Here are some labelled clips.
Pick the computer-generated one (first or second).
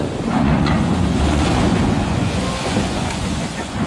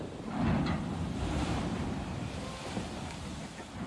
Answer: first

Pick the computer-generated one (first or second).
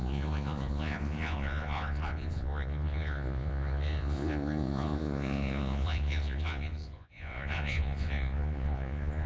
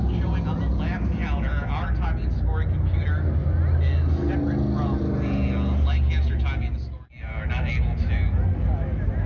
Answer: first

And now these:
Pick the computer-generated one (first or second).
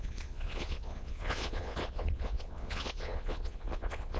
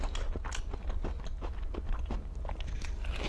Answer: first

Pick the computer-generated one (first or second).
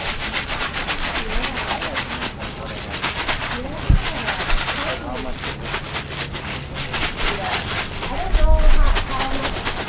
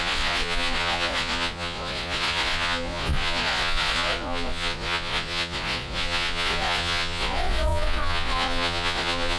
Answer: second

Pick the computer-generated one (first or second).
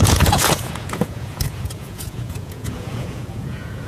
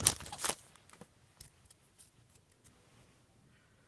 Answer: first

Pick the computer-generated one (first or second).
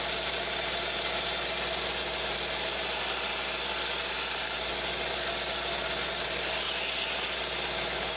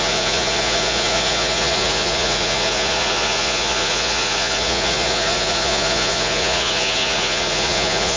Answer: second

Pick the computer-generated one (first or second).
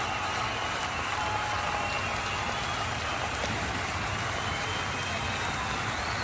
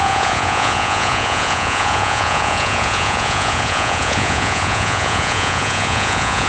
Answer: second